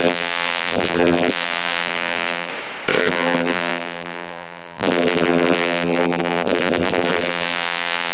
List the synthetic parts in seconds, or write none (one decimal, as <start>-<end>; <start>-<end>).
0.0-2.5; 3.0-8.1